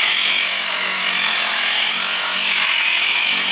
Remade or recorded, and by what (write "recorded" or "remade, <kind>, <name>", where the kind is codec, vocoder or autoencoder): remade, autoencoder, DAC-VAE